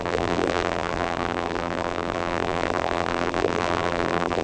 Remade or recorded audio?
remade